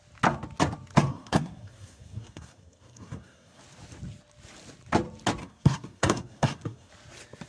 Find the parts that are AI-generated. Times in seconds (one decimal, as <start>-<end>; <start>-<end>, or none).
1.1-3.6; 5.4-6.9